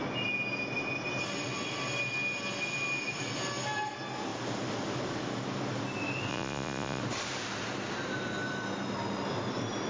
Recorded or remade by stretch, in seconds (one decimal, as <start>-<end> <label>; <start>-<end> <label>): 0.0-6.3 recorded; 6.3-7.0 remade; 7.0-9.9 recorded